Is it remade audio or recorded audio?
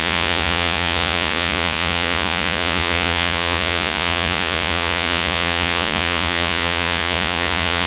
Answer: remade